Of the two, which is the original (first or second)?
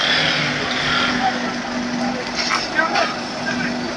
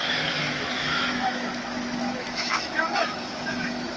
first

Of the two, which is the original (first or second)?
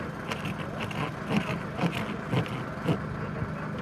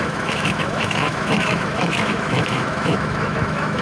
first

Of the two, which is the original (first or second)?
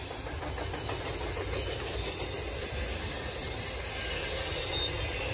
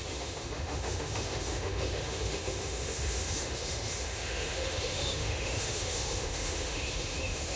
first